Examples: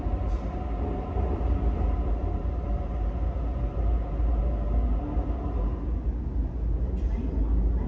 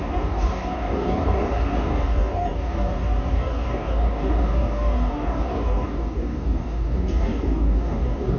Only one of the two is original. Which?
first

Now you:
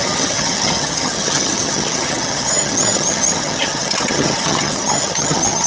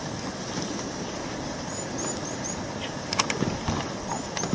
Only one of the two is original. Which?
second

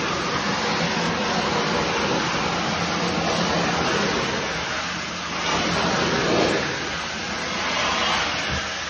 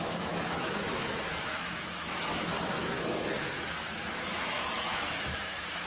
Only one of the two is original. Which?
first